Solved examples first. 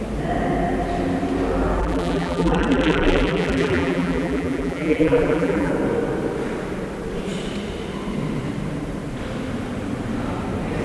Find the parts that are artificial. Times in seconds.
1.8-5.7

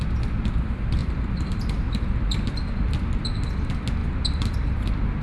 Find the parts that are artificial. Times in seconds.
1.0-2.7

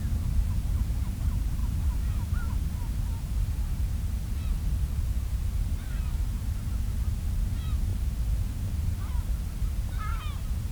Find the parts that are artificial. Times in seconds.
1.6-2.9; 7.9-9.1

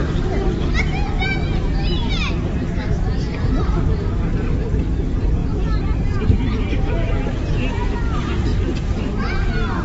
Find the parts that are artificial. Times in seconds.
2.0-3.8; 8.5-9.3